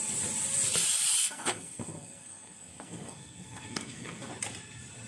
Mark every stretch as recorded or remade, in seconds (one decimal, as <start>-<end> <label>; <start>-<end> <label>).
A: 0.0-1.2 recorded; 1.2-4.3 remade; 4.3-5.1 recorded